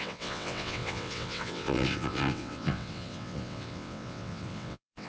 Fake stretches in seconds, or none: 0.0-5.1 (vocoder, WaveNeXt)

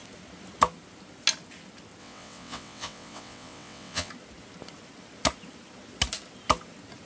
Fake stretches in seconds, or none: 2.0-4.1 (vocoder, WaveNeXt)

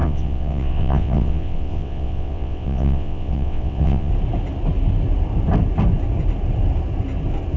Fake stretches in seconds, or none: 0.0-4.1 (vocoder, WaveNeXt)

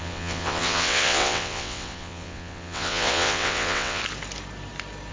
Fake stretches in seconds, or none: 0.0-4.0 (vocoder, WaveNeXt)

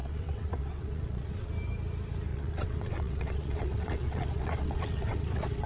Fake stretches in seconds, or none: 0.0-1.5 (vocoder, WaveNeXt); 2.3-5.7